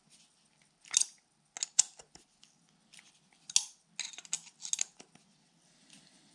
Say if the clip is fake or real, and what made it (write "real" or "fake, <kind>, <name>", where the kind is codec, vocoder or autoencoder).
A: real